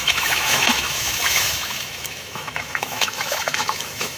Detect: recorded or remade remade